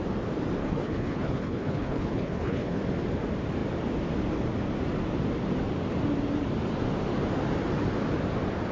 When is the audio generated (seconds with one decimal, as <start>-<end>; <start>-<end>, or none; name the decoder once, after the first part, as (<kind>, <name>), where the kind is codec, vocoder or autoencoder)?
0.6-2.8 (codec, HILCodec)